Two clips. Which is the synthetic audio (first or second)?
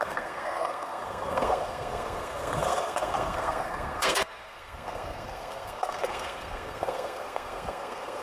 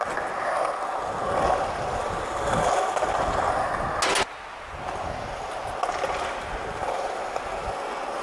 first